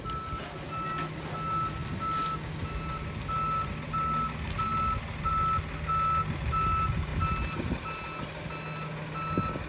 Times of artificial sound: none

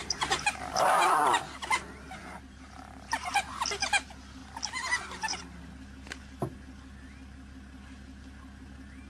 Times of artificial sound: 0.0-1.3 (vocoder, BigVGAN v2); 2.2-3.3; 4.4-5.4

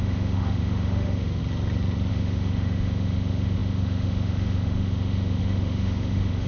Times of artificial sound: 0.0-1.4 (autoencoder, DAC-VAE); 2.1-6.5